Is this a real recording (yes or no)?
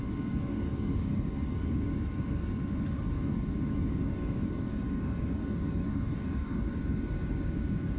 no